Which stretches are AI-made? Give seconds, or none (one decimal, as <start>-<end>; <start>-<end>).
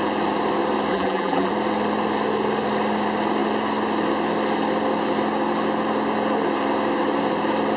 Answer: 0.9-1.5